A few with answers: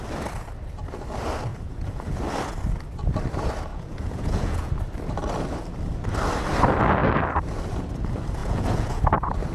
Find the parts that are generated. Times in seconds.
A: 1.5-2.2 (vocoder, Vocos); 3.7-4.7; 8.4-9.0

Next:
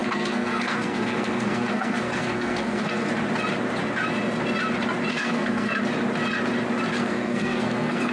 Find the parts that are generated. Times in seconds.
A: 0.0-3.1 (codec, SNAC); 5.1-5.8; 7.0-8.1